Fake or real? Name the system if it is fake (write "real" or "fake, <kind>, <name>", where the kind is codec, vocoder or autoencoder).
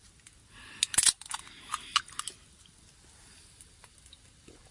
real